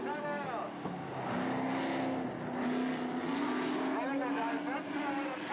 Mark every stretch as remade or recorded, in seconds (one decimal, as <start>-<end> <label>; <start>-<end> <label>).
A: 0.0-5.5 recorded